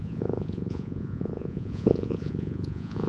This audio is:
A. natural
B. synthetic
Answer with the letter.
B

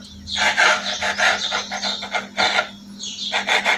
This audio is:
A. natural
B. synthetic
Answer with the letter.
A